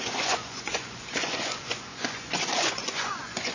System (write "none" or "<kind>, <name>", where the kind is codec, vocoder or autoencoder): vocoder, Vocos